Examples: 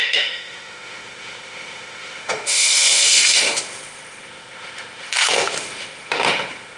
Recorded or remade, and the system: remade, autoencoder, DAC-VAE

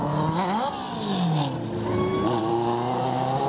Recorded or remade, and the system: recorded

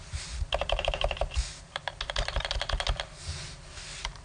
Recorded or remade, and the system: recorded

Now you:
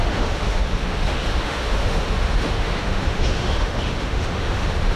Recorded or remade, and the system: remade, autoencoder, DAC-VAE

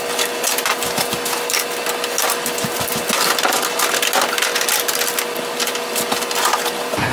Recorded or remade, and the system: recorded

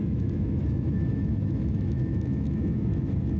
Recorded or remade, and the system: remade, autoencoder, DAC-VAE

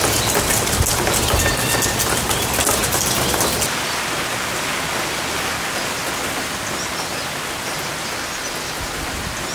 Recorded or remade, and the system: recorded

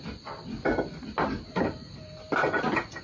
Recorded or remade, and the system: recorded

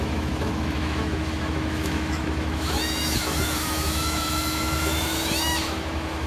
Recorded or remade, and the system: remade, autoencoder, DAC-VAE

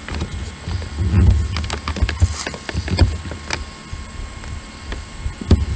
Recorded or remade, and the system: recorded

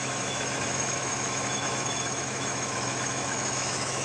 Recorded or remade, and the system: remade, autoencoder, DAC-VAE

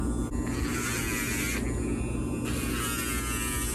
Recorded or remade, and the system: recorded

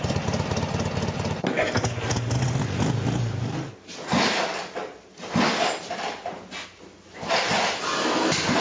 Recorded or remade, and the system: recorded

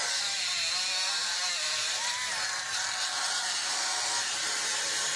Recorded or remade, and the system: recorded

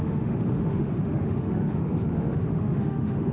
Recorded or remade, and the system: remade, autoencoder, DAC-VAE